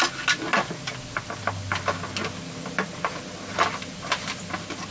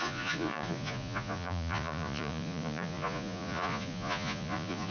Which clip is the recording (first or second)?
first